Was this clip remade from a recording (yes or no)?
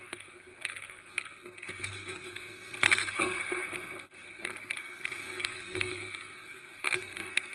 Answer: yes